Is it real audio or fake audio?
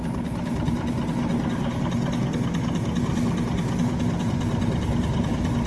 real